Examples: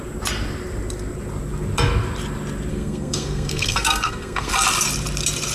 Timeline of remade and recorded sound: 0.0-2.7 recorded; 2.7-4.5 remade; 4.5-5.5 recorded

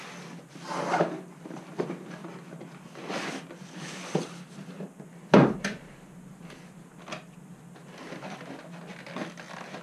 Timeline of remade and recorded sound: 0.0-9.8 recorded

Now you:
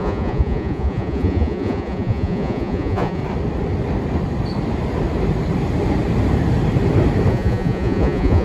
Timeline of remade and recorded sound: 0.0-3.2 remade; 3.2-7.3 recorded; 7.3-8.4 remade

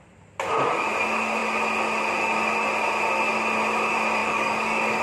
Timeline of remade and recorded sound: 0.0-4.2 recorded; 4.2-5.0 remade

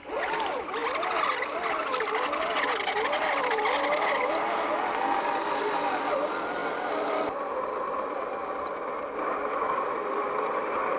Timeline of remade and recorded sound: 0.0-11.0 recorded